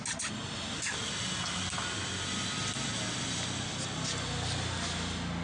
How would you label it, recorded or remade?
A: recorded